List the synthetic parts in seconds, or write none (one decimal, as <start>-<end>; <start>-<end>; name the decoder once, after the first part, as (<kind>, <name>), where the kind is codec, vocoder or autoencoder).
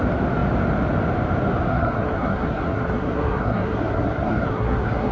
1.7-5.1 (codec, SNAC)